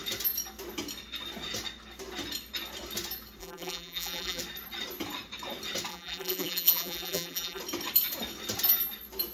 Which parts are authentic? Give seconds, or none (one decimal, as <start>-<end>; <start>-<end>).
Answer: 0.0-3.4; 4.4-5.9; 7.6-9.3